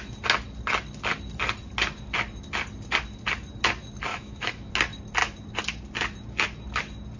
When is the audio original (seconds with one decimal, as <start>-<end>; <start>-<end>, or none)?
0.0-4.1; 4.7-7.2